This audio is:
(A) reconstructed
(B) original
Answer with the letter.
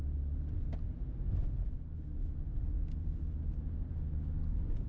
B